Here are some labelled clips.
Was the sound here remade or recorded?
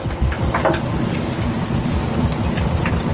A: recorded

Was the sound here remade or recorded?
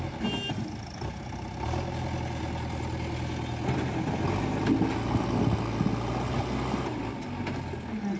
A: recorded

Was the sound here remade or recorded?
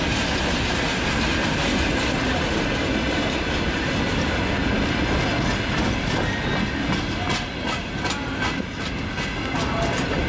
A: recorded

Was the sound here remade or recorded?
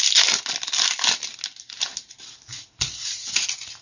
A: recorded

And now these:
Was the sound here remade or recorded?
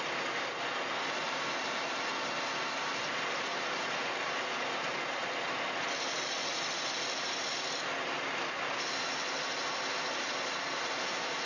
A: recorded